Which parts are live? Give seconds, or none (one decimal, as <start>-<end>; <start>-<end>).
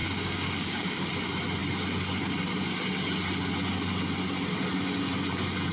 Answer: 1.1-5.7